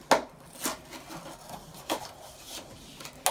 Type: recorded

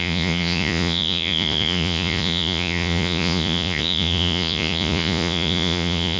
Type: remade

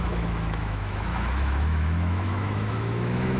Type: remade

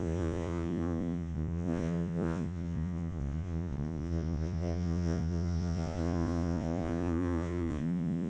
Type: remade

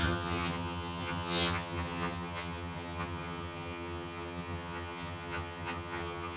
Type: remade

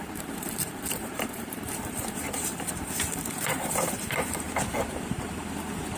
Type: remade